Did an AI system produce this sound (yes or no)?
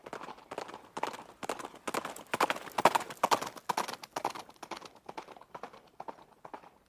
no